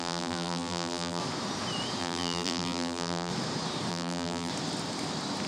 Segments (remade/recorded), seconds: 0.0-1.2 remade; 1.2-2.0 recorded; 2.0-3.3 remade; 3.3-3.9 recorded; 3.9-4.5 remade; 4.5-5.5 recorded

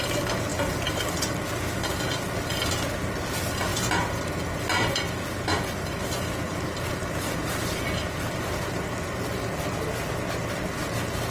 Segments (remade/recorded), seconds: 0.0-0.5 recorded; 0.5-1.0 remade; 1.0-7.0 recorded; 7.0-8.8 remade; 8.8-11.3 recorded

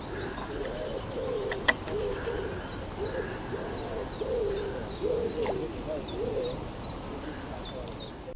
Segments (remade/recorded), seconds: 0.0-8.4 recorded

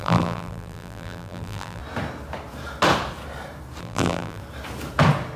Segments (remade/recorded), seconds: 0.0-1.8 remade; 1.8-3.8 recorded; 3.8-4.4 remade; 4.4-5.4 recorded